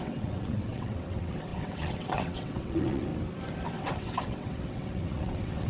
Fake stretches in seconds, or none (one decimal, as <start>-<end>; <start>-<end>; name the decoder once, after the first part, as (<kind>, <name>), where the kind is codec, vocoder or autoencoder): 0.0-3.1 (vocoder, WaveNeXt); 3.7-5.7